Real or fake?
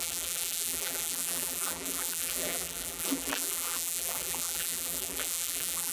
fake